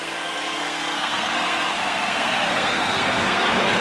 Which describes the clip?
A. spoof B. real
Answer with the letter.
A